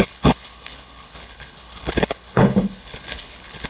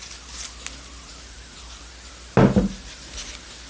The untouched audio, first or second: second